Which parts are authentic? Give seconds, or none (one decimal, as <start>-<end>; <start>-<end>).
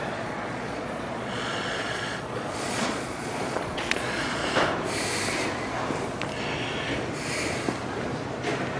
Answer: 4.4-8.8